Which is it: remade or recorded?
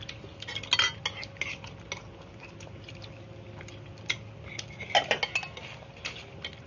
recorded